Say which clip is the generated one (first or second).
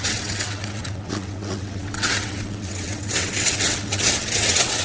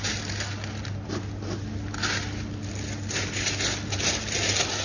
first